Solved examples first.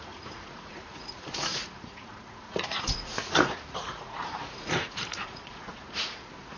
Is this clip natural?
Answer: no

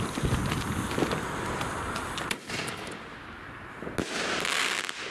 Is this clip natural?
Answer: yes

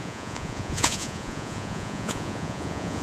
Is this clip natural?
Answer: no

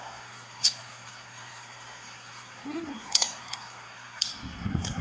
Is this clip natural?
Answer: no